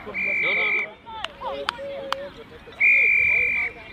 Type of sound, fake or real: real